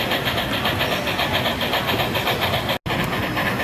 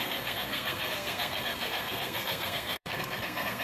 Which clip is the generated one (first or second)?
second